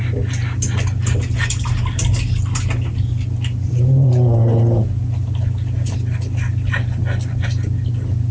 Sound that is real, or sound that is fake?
real